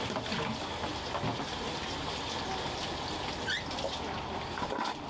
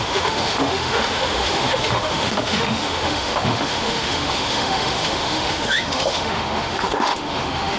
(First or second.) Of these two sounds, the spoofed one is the second